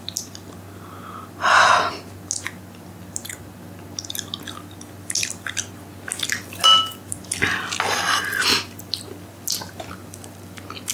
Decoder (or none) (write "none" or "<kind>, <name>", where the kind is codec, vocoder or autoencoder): none